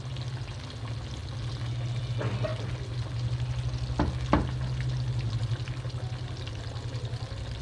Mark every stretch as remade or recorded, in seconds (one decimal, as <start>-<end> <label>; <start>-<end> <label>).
0.0-7.6 recorded